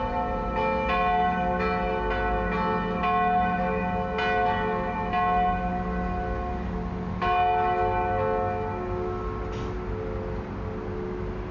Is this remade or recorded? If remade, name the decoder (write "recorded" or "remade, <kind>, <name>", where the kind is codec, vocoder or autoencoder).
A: recorded